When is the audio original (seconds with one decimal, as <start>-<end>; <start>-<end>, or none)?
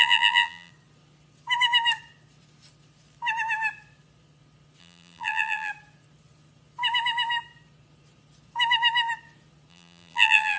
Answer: 0.7-4.8; 5.7-9.7